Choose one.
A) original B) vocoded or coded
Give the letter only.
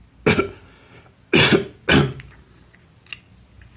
A